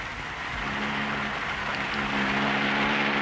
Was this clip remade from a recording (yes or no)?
no